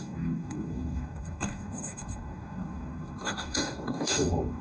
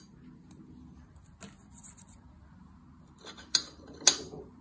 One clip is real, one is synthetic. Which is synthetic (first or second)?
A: first